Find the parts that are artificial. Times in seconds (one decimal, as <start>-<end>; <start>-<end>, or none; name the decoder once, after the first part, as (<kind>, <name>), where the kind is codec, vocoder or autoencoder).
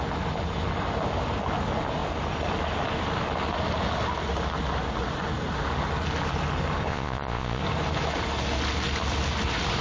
6.9-7.6 (vocoder, Vocos)